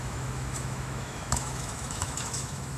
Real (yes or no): no